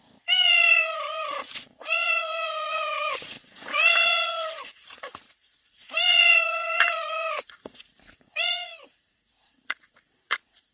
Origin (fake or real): fake